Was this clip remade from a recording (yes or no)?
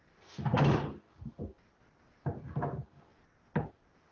no